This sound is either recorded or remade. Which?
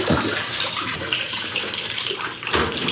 remade